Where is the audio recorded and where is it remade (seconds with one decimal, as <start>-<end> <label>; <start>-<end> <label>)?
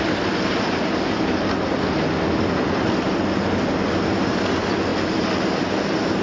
0.0-6.2 recorded